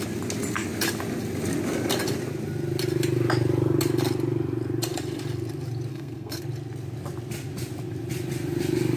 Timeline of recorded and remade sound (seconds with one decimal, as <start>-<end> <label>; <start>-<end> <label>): 0.0-5.9 recorded; 5.9-6.4 remade; 6.4-9.0 recorded